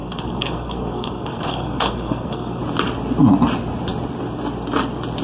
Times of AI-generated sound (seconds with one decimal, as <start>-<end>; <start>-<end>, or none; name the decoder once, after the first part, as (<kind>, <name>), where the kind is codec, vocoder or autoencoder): 0.0-2.6 (codec, SNAC)